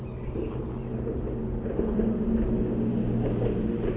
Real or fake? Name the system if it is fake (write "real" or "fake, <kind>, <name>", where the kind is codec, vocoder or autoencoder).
real